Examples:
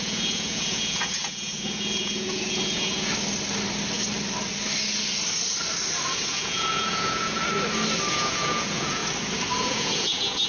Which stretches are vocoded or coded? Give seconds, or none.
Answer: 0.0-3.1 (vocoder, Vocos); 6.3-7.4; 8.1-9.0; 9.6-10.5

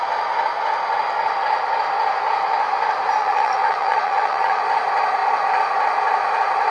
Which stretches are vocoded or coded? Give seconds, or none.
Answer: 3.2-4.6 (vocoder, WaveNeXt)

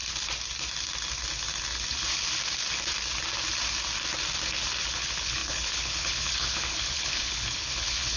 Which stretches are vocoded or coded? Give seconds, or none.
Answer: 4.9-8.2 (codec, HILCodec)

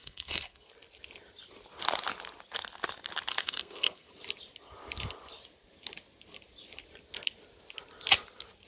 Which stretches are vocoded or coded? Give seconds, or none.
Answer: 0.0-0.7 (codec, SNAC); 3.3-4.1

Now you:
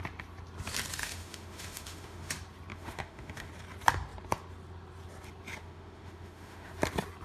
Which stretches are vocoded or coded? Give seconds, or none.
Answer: 1.0-2.3 (autoencoder, DAC-VAE); 2.7-3.5; 5.6-6.7